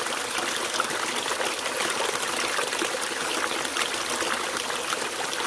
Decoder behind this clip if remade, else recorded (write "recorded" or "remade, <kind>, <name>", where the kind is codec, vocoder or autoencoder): recorded